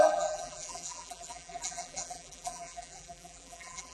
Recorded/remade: remade